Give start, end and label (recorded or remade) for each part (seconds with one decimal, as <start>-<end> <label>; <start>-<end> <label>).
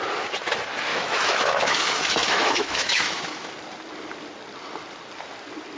0.0-0.9 recorded; 0.9-3.5 remade; 3.5-5.8 recorded